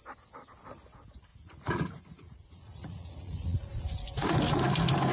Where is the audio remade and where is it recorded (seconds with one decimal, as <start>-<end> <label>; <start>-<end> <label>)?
0.0-1.3 recorded; 1.3-4.4 remade; 4.4-5.1 recorded